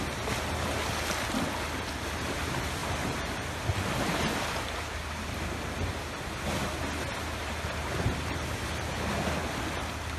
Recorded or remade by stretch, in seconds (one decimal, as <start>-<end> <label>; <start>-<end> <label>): 0.0-2.8 recorded; 2.8-3.6 remade; 3.6-10.2 recorded